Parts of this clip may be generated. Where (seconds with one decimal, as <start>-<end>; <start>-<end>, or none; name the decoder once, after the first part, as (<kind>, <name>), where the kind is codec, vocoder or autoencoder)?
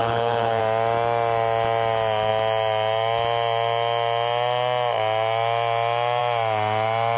0.0-0.6 (codec, HILCodec)